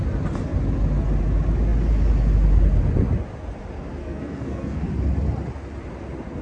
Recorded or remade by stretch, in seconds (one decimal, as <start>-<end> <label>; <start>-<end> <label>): 0.0-4.0 recorded; 4.0-4.9 remade; 4.9-6.4 recorded